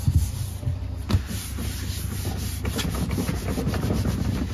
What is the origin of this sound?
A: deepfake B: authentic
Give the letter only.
B